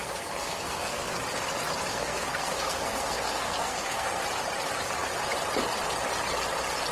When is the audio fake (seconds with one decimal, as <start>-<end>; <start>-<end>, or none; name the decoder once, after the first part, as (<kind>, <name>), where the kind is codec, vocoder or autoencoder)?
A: 0.0-1.2 (codec, SNAC); 1.9-4.2